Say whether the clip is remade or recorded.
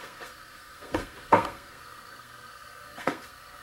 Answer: remade